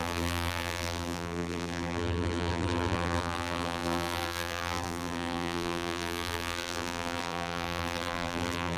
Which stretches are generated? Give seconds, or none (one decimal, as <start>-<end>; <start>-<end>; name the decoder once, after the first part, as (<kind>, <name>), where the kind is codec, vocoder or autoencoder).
0.0-8.8 (vocoder, BigVGAN v2)